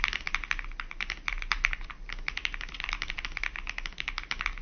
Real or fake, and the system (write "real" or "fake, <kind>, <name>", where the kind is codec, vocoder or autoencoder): real